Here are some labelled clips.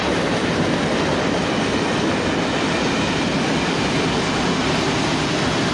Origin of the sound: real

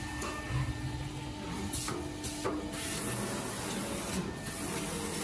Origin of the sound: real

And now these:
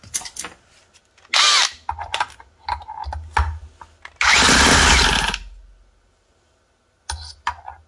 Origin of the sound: real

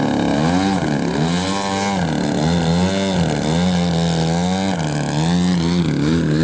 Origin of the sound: real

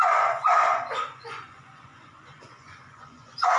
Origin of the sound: fake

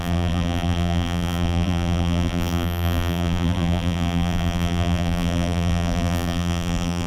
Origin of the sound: fake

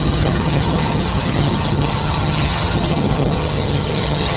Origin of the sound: fake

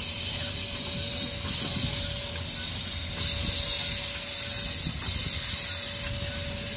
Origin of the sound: real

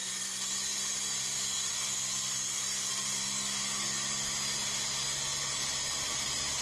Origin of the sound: real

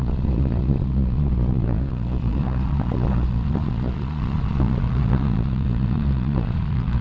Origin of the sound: fake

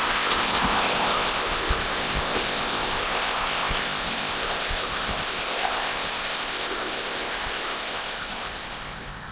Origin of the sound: fake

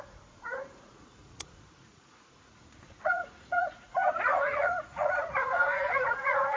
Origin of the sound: fake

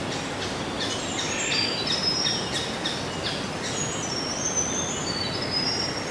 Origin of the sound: real